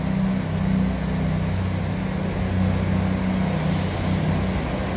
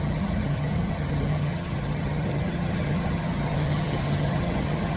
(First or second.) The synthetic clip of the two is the second